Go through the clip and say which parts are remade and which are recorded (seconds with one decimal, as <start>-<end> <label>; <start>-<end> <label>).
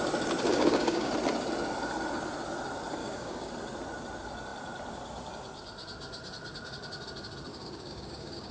0.0-0.5 recorded; 0.5-1.1 remade; 1.1-3.0 recorded; 3.0-3.5 remade; 3.5-7.5 recorded; 7.5-8.5 remade